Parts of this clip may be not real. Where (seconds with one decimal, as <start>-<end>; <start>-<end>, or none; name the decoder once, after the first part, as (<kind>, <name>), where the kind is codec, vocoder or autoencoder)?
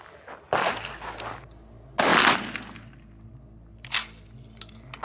none